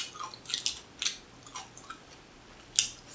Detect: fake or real real